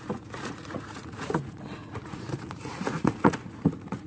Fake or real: fake